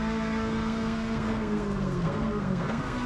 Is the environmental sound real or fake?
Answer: fake